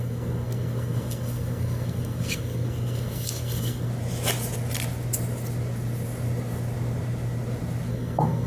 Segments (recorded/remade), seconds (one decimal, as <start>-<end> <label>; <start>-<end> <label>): 0.0-3.9 remade; 3.9-7.9 recorded; 7.9-8.5 remade